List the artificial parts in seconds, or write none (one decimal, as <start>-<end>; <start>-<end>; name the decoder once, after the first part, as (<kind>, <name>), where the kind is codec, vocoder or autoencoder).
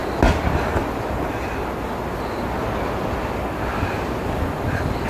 none